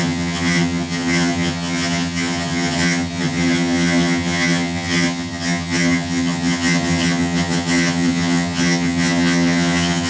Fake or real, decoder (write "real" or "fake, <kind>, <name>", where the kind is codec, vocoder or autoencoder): fake, vocoder, HiFi-GAN